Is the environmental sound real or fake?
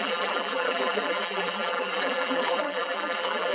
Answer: fake